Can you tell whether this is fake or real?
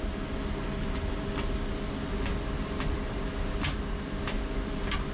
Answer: real